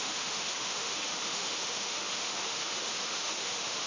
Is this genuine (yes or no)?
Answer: no